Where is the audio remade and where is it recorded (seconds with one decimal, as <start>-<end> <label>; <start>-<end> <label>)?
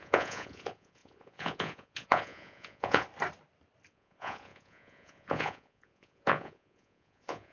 0.0-3.1 remade; 3.1-3.9 recorded; 3.9-7.5 remade